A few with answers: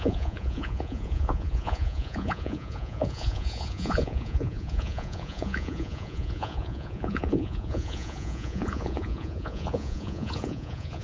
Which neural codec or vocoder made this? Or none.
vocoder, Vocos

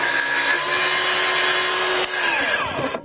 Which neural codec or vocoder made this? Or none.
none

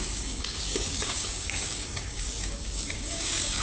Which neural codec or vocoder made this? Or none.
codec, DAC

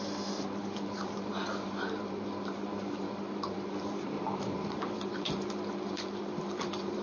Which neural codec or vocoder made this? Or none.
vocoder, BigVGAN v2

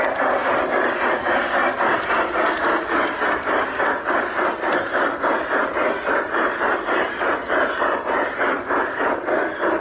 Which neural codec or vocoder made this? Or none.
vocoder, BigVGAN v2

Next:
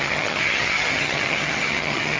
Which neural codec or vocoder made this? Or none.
vocoder, HiFi-GAN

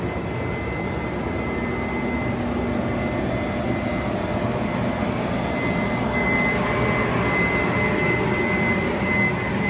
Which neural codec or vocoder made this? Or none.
none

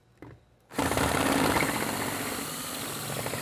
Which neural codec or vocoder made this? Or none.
none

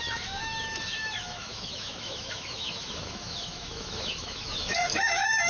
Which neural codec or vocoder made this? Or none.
autoencoder, DAC-VAE